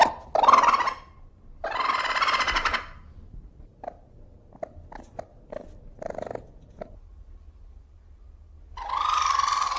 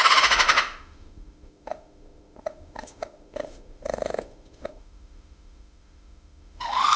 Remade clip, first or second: second